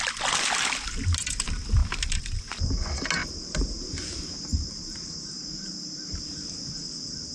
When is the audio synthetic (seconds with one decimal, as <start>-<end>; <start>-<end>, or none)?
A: 1.8-2.4; 3.2-6.5